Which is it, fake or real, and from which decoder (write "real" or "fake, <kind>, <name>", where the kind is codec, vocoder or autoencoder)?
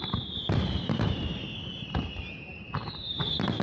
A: fake, vocoder, BigVGAN v2